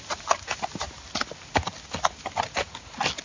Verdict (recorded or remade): recorded